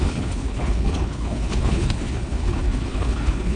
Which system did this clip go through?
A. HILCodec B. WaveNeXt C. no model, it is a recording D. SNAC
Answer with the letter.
A